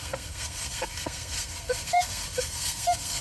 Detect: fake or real fake